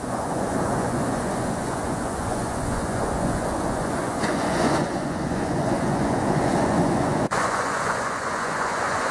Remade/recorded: remade